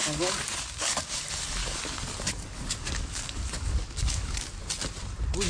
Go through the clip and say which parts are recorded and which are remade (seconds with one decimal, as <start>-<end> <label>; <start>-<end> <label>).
0.0-1.2 remade; 1.2-1.6 recorded; 1.6-4.6 remade; 4.6-5.5 recorded